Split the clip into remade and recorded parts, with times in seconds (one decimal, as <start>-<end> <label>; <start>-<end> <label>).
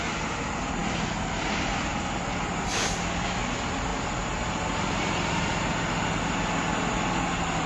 0.0-7.7 recorded